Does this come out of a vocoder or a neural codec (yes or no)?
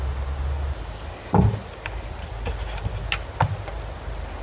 no